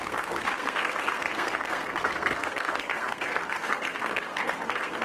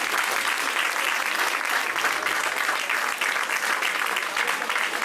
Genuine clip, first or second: second